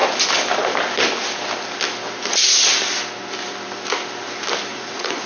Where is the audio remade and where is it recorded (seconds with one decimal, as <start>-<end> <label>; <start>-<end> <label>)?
0.0-4.7 recorded; 4.7-5.3 remade